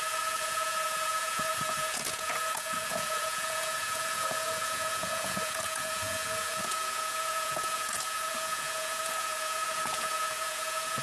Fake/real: fake